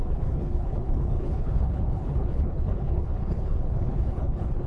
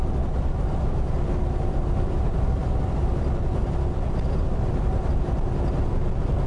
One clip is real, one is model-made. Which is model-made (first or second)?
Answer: first